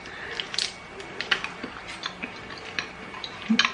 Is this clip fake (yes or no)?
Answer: no